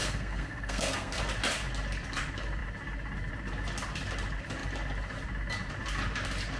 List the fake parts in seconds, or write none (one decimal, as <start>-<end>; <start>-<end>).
0.0-1.2